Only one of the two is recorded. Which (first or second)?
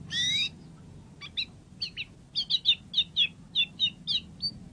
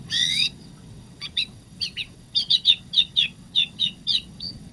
first